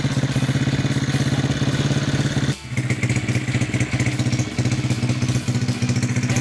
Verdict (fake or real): real